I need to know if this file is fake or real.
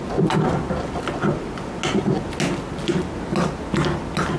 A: real